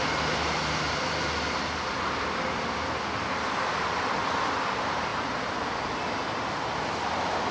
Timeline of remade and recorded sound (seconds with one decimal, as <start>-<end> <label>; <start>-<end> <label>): 0.0-5.1 remade; 5.1-5.8 recorded; 5.8-7.5 remade